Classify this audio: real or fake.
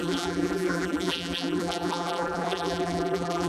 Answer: fake